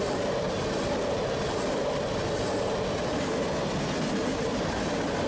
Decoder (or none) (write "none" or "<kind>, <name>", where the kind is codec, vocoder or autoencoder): none